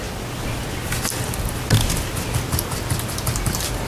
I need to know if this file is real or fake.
real